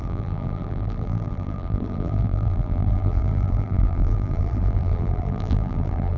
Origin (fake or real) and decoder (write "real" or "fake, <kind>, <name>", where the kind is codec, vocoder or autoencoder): fake, vocoder, BigVGAN v2